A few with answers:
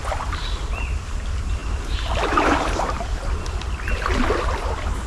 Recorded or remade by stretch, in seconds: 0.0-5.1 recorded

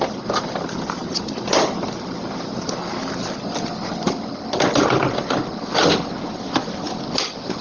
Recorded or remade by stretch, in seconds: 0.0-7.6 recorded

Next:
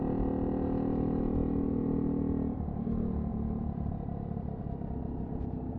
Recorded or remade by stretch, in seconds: 0.0-3.3 recorded; 3.3-4.6 remade; 4.6-5.8 recorded